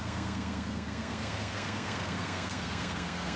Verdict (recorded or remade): remade